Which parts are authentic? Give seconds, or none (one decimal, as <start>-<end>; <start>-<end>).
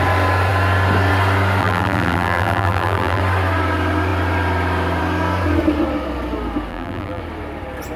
0.0-1.6; 3.2-6.7; 7.2-8.0